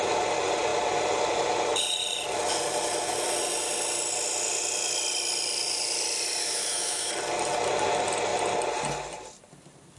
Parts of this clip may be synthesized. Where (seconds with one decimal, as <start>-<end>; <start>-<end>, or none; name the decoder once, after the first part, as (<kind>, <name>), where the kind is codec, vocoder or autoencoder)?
6.4-7.1 (autoencoder, DAC-VAE)